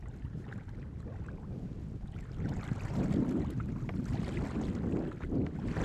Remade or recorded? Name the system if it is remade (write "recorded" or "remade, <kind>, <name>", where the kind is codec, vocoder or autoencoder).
recorded